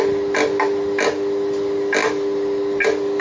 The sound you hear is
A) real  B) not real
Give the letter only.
A